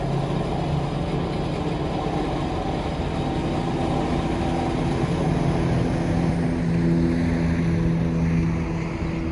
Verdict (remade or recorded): recorded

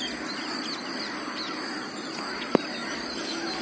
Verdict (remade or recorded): recorded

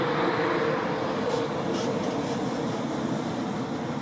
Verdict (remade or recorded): recorded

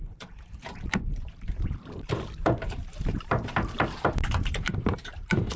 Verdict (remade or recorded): remade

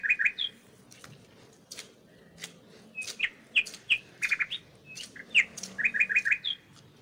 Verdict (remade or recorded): recorded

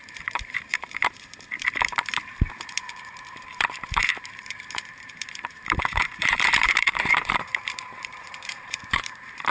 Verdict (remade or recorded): remade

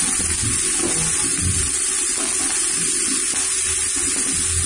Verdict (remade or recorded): recorded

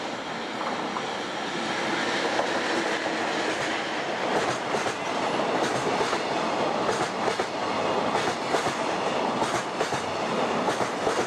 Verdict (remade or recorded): recorded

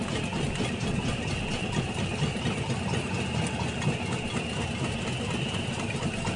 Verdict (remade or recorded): recorded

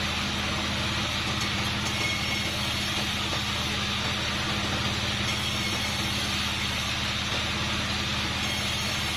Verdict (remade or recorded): recorded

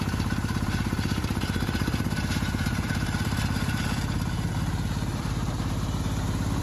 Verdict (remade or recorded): remade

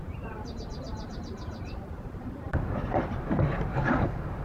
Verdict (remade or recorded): remade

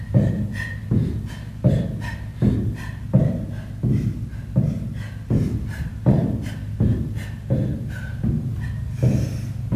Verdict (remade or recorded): recorded